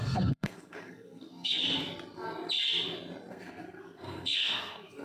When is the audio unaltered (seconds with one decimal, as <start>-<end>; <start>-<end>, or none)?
1.6-3.3